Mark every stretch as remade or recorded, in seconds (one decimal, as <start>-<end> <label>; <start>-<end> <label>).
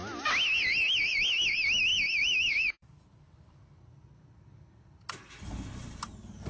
0.0-1.9 recorded; 1.9-3.6 remade; 3.6-6.5 recorded